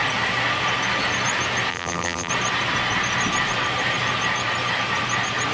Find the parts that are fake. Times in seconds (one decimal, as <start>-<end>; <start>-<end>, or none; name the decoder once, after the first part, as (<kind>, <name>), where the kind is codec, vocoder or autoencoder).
1.7-2.3 (vocoder, BigVGAN v2)

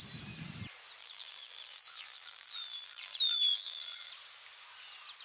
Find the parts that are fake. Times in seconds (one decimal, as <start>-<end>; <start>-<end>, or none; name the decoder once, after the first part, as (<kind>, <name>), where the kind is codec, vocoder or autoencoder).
1.0-4.1 (vocoder, BigVGAN v2)

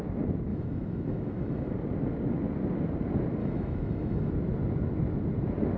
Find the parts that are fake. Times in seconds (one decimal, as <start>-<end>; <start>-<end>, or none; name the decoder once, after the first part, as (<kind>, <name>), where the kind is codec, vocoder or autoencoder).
0.5-1.7 (autoencoder, DAC-VAE); 3.4-4.3

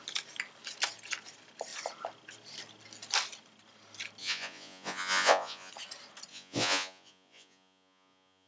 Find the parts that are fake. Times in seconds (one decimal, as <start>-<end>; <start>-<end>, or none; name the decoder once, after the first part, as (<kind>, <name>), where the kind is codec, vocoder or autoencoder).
4.2-5.7 (vocoder, Vocos); 6.3-8.5

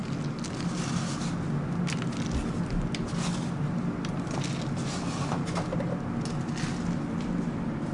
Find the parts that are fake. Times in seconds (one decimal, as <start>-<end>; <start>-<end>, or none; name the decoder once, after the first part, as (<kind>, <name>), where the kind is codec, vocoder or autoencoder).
none